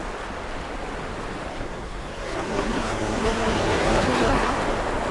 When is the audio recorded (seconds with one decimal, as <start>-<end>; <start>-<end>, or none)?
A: 0.0-1.5; 4.6-5.1